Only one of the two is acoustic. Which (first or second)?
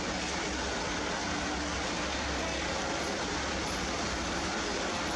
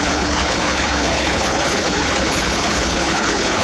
first